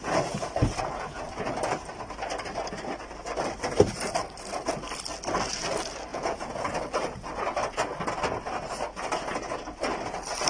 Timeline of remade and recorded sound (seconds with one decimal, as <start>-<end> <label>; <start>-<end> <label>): 0.0-6.1 recorded; 6.1-6.7 remade; 6.7-10.5 recorded